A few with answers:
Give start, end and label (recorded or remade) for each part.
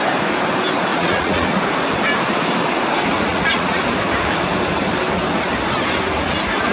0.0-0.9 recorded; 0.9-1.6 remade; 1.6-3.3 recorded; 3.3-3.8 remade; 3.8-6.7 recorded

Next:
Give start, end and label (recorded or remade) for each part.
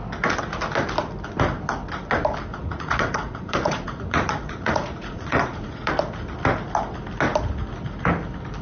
0.0-2.5 recorded; 2.5-5.9 remade; 5.9-8.6 recorded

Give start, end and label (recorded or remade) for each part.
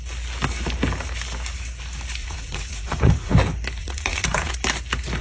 0.0-2.2 recorded; 2.2-3.3 remade; 3.3-3.8 recorded; 3.8-4.5 remade; 4.5-5.2 recorded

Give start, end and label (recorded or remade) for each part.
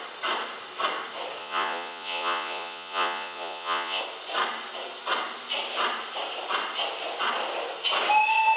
0.0-1.4 recorded; 1.4-4.0 remade; 4.0-8.6 recorded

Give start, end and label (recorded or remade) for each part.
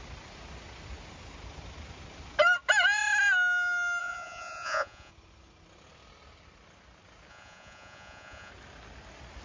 0.0-4.0 recorded; 4.0-5.1 remade; 5.1-7.3 recorded; 7.3-8.5 remade; 8.5-9.4 recorded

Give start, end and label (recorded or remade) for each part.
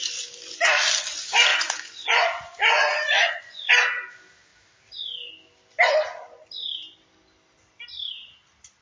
0.0-1.5 recorded; 1.5-3.7 remade; 3.7-8.8 recorded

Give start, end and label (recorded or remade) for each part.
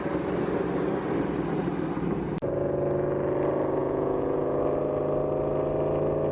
0.0-3.8 recorded; 3.8-4.6 remade; 4.6-6.3 recorded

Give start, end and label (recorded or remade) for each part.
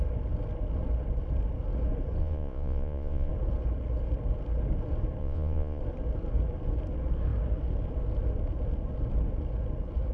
0.0-2.2 recorded; 2.2-3.3 remade; 3.3-5.2 recorded; 5.2-5.8 remade; 5.8-10.1 recorded